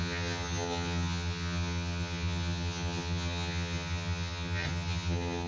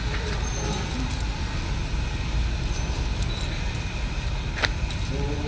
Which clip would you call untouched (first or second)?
second